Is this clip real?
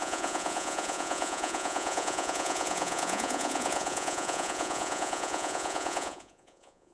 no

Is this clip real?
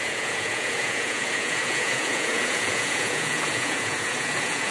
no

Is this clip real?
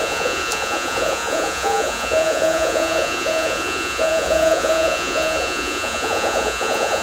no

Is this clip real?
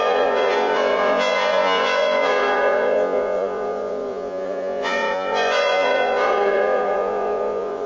no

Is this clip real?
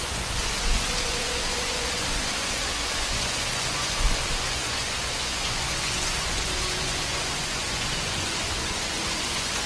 no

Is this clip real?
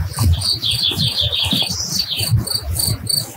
yes